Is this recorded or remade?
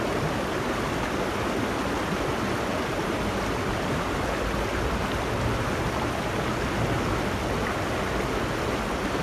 recorded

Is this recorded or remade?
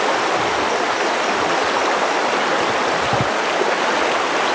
recorded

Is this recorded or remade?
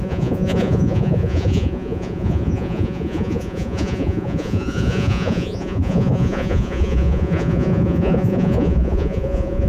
remade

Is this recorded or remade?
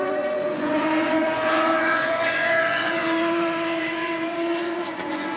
remade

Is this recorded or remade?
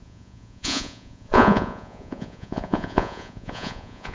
remade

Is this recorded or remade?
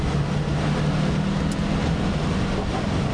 recorded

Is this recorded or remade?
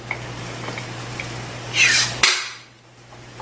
recorded